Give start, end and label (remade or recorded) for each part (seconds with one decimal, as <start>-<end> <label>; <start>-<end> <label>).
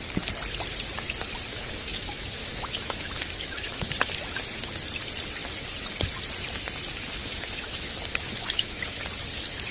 0.0-1.5 recorded; 1.5-3.9 remade; 3.9-7.2 recorded; 7.2-9.0 remade; 9.0-9.7 recorded